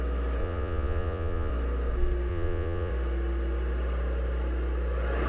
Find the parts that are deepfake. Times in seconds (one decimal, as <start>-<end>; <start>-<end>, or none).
0.4-1.5; 2.3-2.9